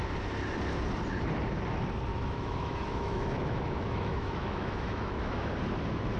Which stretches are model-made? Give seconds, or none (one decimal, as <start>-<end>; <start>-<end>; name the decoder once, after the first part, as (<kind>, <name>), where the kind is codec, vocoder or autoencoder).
2.1-5.5 (autoencoder, DAC-VAE)